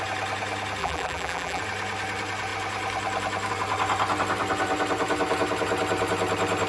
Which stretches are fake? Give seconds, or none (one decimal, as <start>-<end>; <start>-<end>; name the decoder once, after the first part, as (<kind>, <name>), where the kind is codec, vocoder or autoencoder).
0.8-1.6 (vocoder, BigVGAN v2)

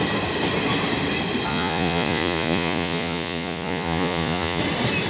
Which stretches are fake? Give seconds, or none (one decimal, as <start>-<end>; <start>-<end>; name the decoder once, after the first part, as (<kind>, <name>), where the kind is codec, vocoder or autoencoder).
1.5-4.6 (vocoder, Vocos)